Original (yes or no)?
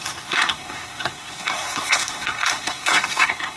no